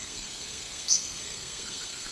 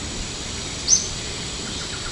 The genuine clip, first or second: second